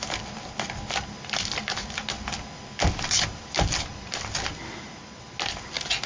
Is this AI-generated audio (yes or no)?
no